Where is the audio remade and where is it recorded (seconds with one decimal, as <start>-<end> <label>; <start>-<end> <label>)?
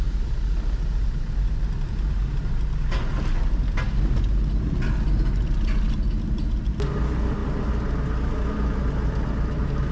0.0-9.9 recorded